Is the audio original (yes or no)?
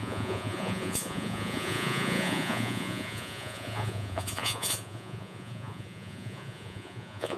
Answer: no